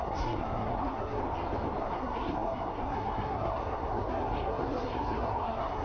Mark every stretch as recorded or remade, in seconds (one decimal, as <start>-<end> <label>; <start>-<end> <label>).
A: 0.0-1.2 remade; 1.2-1.8 recorded; 1.8-5.8 remade